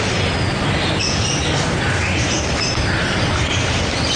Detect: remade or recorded recorded